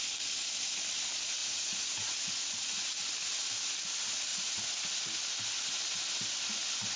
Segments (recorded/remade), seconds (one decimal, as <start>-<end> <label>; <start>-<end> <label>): 0.0-1.4 recorded; 1.4-3.0 remade; 3.0-4.3 recorded; 4.3-4.9 remade; 4.9-7.0 recorded